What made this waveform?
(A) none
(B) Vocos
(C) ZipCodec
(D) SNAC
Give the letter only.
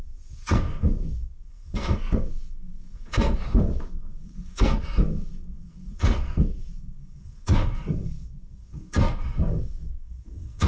D